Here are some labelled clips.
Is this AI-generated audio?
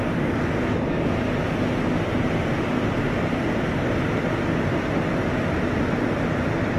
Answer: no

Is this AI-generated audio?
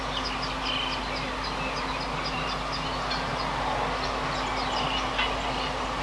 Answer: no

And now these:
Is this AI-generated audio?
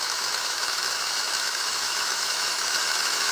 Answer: yes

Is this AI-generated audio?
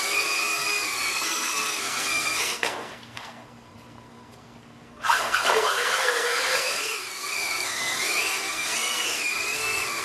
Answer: yes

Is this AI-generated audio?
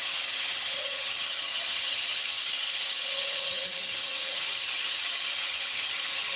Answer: yes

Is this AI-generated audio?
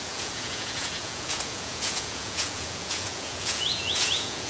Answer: yes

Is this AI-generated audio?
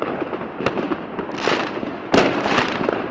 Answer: no